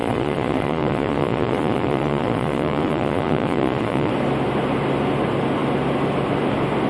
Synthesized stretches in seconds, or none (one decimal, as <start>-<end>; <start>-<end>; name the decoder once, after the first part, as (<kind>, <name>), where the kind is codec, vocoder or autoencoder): 0.0-4.1 (vocoder, Vocos)